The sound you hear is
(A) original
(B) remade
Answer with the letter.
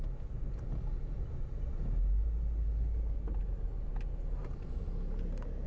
A